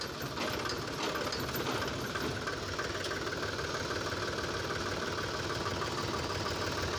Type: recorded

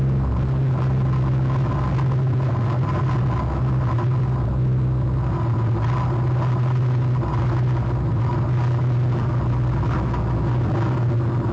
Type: recorded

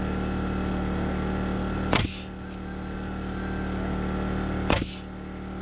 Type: recorded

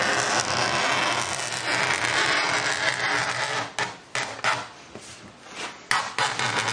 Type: recorded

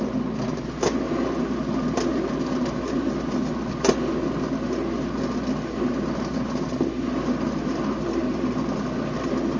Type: recorded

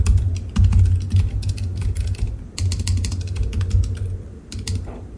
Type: recorded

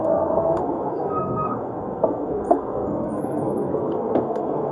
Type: remade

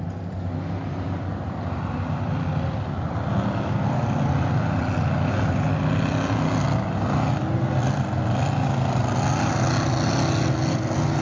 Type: recorded